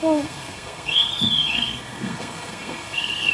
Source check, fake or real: fake